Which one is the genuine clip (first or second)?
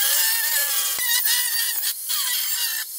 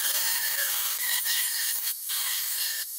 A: first